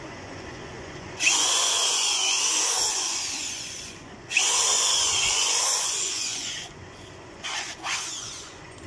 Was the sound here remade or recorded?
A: remade